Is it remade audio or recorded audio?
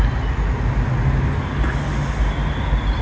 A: recorded